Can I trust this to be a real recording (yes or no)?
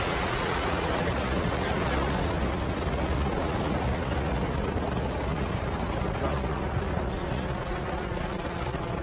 no